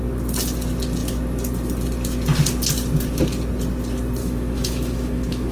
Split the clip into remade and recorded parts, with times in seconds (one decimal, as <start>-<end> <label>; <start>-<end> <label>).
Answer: 0.0-4.2 recorded; 4.2-5.5 remade